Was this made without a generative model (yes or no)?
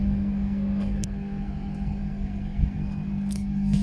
no